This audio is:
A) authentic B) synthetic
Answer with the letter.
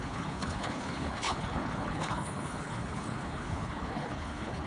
B